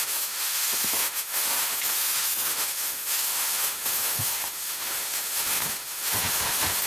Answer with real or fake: fake